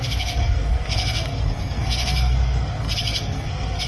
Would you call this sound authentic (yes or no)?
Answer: no